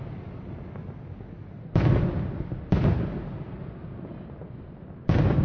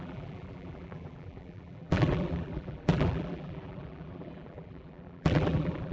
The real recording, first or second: first